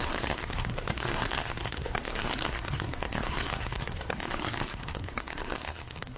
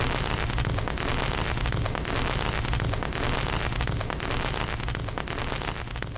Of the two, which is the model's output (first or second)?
first